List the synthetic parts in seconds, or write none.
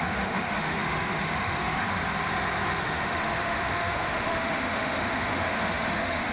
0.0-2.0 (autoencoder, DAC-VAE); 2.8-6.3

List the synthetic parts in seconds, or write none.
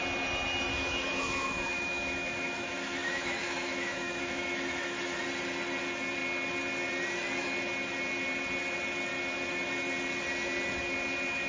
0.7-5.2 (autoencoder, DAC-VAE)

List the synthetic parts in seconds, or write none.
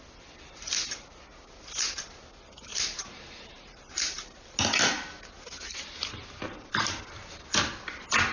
none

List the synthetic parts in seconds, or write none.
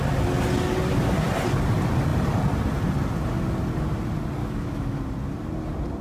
4.4-5.0 (autoencoder, DAC-VAE)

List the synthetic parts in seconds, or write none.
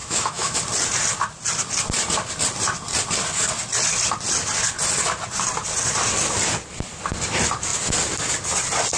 0.0-0.6 (autoencoder, DAC-VAE)